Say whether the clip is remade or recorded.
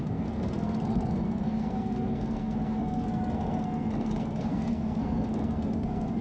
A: remade